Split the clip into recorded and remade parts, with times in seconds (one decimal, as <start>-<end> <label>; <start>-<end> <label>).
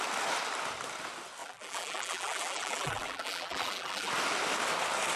0.0-1.4 recorded; 1.4-4.1 remade; 4.1-5.2 recorded